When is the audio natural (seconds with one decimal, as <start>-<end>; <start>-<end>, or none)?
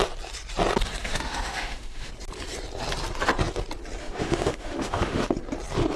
0.0-1.0; 2.1-4.0; 5.2-6.0